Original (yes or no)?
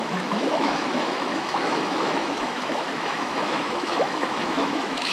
no